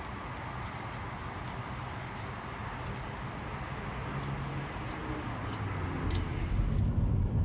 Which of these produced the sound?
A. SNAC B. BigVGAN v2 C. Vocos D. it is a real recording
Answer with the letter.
D